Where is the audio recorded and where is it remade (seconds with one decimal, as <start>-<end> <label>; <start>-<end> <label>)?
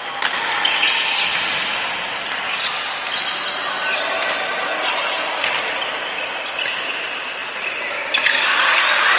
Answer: 0.0-9.2 recorded